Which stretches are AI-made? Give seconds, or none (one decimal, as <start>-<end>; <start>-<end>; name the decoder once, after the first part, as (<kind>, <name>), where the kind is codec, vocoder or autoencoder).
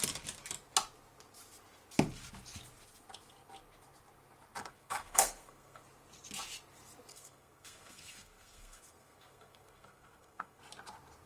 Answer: 4.6-5.8 (codec, SNAC); 7.1-10.6